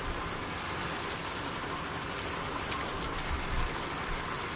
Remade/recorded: recorded